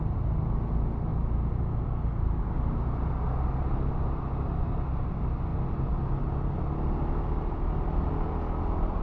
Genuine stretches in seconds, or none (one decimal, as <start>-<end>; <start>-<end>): 0.0-9.0